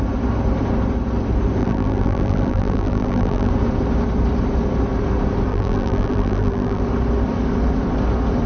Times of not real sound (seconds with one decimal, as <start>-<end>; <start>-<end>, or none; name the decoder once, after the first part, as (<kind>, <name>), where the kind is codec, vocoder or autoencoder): 1.6-3.5 (vocoder, BigVGAN v2); 5.5-6.8